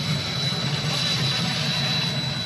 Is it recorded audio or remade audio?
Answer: recorded